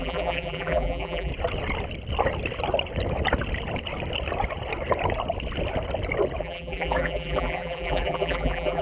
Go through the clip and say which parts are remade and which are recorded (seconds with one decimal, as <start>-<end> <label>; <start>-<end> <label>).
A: 0.0-1.3 remade; 1.3-6.4 recorded; 6.4-8.8 remade